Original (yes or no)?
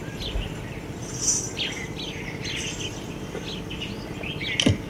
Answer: yes